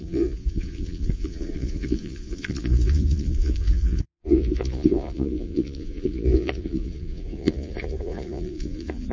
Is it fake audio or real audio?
fake